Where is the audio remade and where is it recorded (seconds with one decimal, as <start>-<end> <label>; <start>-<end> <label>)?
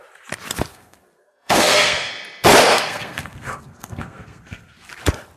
0.0-0.7 recorded; 0.7-2.1 remade; 2.1-2.7 recorded; 2.7-4.9 remade; 4.9-5.4 recorded